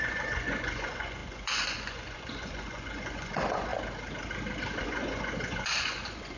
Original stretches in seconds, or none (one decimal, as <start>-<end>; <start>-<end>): 3.7-4.8